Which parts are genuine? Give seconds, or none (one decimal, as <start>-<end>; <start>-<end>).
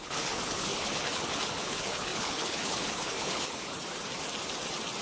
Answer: 3.7-5.0